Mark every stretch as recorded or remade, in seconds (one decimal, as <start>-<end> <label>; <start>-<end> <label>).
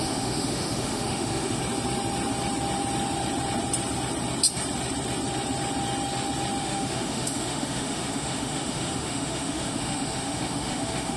0.0-1.6 remade; 1.6-6.6 recorded; 6.6-11.2 remade